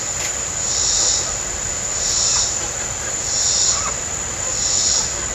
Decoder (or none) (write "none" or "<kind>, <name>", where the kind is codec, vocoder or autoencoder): none